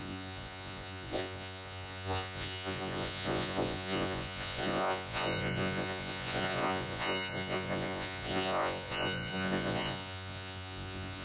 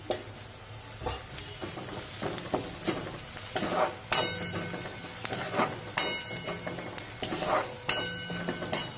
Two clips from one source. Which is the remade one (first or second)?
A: first